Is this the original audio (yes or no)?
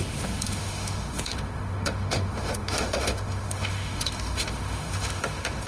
no